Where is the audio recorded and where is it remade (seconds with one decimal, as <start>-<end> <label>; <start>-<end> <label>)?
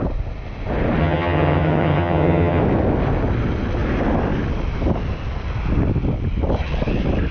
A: 0.0-1.0 recorded; 1.0-2.6 remade; 2.6-7.3 recorded